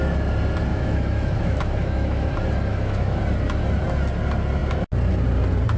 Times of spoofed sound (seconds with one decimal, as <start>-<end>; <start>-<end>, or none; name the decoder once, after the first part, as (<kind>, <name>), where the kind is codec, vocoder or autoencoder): 0.7-2.3 (autoencoder, DAC-VAE); 2.7-3.2